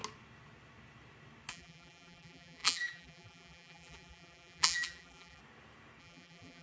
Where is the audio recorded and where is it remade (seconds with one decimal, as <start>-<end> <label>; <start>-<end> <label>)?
0.0-1.5 recorded; 1.5-5.4 remade; 5.4-6.0 recorded; 6.0-6.6 remade